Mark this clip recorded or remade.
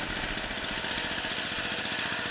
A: recorded